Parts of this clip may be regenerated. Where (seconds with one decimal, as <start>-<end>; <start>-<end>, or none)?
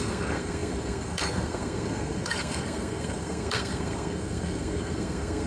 0.0-5.5